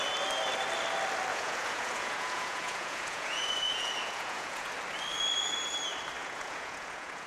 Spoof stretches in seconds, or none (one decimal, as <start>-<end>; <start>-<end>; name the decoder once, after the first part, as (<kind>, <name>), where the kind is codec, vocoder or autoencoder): 1.3-4.7 (vocoder, Vocos); 6.2-7.3